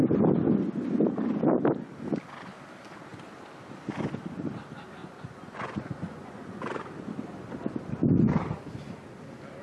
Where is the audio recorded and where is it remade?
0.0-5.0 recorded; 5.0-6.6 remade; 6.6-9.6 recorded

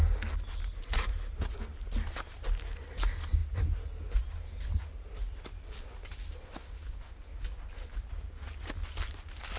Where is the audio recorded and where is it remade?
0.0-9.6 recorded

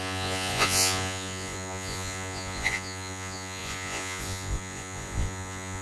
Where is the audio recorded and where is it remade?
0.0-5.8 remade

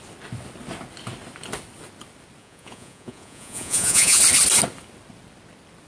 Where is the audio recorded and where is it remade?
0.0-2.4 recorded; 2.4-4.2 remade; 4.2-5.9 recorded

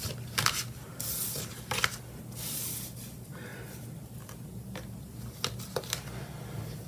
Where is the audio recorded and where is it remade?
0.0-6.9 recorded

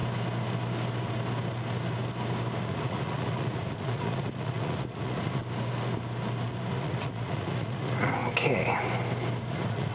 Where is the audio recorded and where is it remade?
0.0-2.6 recorded; 2.6-5.4 remade; 5.4-6.7 recorded; 6.7-8.2 remade; 8.2-9.5 recorded; 9.5-9.9 remade

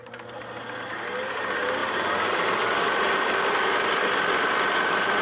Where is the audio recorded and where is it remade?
0.0-5.2 recorded

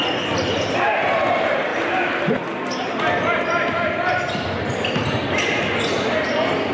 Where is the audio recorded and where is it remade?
0.0-6.7 recorded